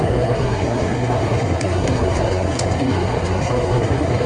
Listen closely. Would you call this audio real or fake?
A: fake